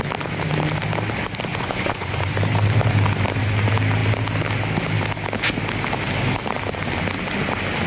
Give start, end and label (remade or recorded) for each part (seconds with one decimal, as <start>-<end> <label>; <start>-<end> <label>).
0.0-1.5 recorded; 1.5-2.2 remade; 2.2-7.9 recorded